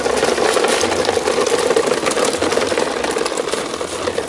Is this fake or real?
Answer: real